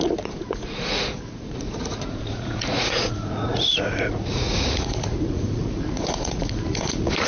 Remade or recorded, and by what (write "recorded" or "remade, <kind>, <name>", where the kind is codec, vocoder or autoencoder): remade, vocoder, Vocos